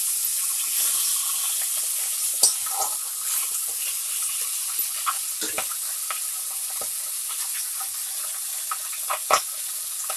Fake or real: real